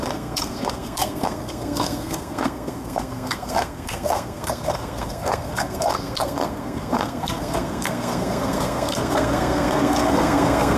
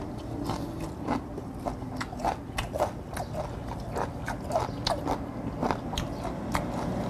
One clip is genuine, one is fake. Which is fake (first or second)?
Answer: first